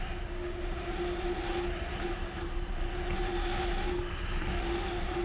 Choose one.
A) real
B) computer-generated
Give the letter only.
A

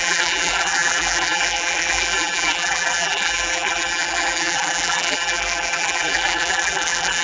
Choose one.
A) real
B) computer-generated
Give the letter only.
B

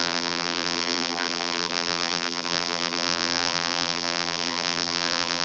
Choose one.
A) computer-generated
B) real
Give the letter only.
A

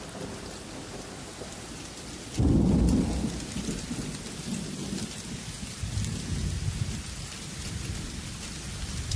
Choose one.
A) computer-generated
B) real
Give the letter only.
B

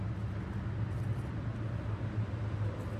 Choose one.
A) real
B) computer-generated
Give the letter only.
A